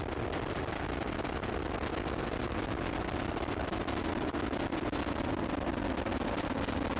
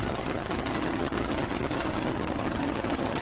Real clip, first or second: first